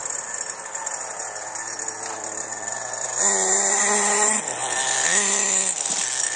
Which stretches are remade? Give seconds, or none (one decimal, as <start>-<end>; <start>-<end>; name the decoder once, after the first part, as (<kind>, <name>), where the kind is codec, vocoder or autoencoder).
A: none